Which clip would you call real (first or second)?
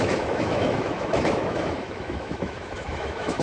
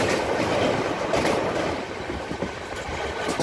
second